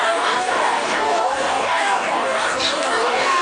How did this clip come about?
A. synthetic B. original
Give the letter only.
A